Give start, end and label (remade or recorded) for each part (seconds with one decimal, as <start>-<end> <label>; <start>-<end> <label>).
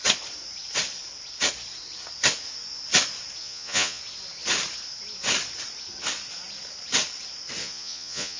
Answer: 0.0-3.4 recorded; 3.4-4.0 remade; 4.0-7.6 recorded; 7.6-8.4 remade